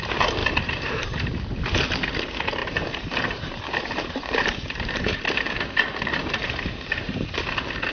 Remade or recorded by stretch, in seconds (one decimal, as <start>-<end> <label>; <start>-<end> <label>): 0.0-0.4 recorded; 0.4-1.6 remade; 1.6-2.6 recorded; 2.6-7.3 remade; 7.3-7.9 recorded